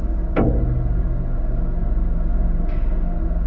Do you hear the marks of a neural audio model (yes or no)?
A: no